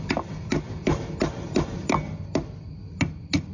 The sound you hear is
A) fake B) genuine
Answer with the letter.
B